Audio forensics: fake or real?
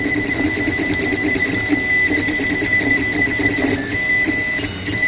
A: real